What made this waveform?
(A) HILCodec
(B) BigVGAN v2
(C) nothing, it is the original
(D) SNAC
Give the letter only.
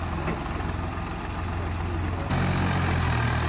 C